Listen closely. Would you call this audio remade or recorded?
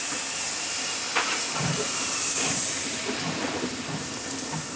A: recorded